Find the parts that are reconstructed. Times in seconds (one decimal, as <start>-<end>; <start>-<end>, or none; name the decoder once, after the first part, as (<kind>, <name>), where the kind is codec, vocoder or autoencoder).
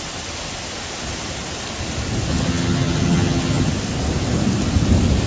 2.3-3.7 (vocoder, HiFi-GAN)